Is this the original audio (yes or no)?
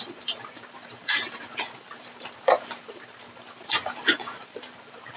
no